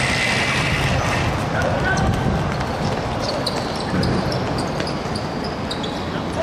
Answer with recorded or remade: recorded